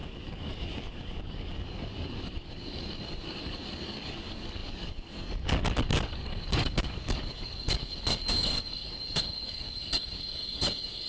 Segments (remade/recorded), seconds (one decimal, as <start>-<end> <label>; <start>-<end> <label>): 0.0-11.1 remade